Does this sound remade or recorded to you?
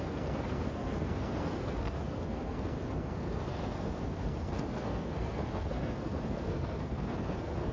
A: remade